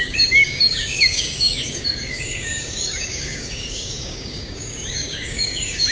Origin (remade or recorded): remade